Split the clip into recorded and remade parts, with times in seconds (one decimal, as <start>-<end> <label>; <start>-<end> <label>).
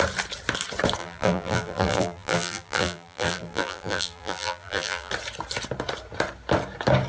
0.0-1.0 recorded; 1.0-5.1 remade; 5.1-7.1 recorded